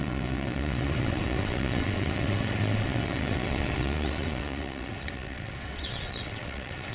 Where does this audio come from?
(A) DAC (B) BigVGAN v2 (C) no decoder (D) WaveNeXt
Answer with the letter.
D